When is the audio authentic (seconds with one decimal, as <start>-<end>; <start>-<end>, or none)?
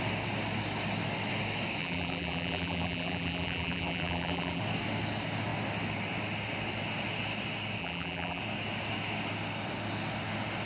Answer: 0.0-1.8; 4.6-7.8; 8.4-10.7